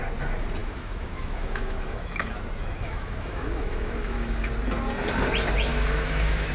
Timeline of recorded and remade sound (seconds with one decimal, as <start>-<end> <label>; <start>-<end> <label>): 0.0-0.6 recorded; 0.6-4.5 remade; 4.5-5.7 recorded; 5.7-6.5 remade